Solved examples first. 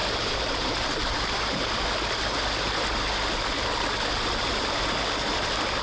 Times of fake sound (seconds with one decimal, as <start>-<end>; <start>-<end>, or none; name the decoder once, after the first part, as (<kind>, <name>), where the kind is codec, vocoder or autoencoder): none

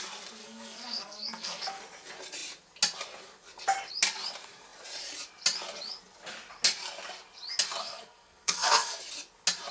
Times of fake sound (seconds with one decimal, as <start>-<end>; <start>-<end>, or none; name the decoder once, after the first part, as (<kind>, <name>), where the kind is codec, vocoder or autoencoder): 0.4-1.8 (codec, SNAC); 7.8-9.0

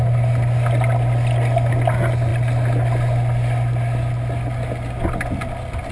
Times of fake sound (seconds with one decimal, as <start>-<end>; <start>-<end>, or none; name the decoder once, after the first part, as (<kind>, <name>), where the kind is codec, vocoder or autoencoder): none

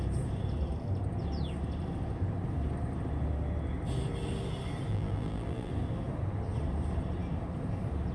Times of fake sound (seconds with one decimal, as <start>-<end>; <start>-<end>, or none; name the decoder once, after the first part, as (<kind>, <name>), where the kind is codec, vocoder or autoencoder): 4.9-5.7 (vocoder, BigVGAN v2)